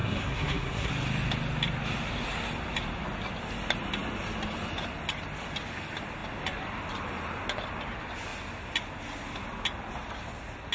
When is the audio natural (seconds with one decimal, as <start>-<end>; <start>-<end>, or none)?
0.9-10.7